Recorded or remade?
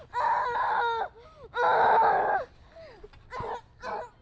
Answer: recorded